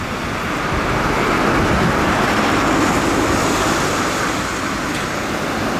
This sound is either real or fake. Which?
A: real